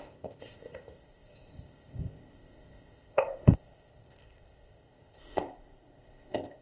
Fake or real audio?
fake